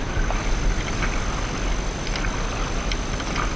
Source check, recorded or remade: recorded